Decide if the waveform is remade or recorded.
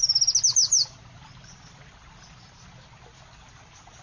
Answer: recorded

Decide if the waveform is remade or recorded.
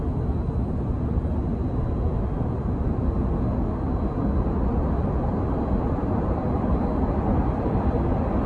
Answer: recorded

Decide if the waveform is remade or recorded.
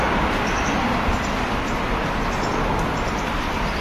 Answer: recorded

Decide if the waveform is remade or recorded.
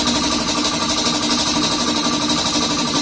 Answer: recorded